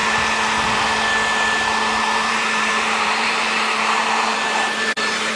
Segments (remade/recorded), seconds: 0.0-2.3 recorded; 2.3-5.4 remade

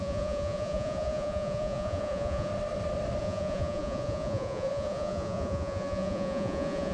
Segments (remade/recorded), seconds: 0.0-2.5 remade; 2.5-3.2 recorded; 3.2-6.9 remade

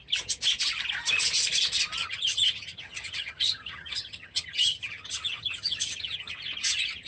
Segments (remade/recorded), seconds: 0.0-2.0 recorded; 2.0-6.3 remade; 6.3-7.1 recorded

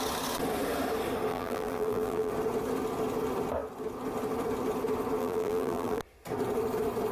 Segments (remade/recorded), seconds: 0.0-1.3 recorded; 1.3-2.3 remade; 2.3-5.2 recorded; 5.2-6.0 remade; 6.0-7.1 recorded

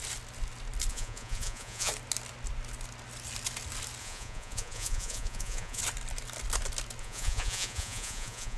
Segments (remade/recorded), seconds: 0.0-0.9 recorded; 0.9-1.9 remade; 1.9-4.0 recorded; 4.0-5.8 remade; 5.8-7.0 recorded; 7.0-8.6 remade

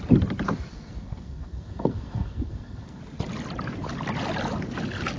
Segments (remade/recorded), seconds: 0.0-0.7 recorded; 0.7-3.0 remade; 3.0-5.2 recorded

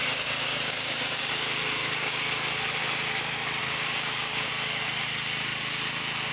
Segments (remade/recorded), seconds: 0.0-1.3 remade; 1.3-1.8 recorded; 1.8-2.3 remade; 2.3-3.6 recorded; 3.6-4.5 remade; 4.5-6.3 recorded

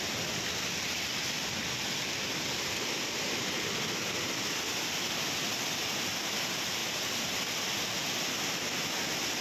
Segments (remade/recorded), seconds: 0.0-9.4 recorded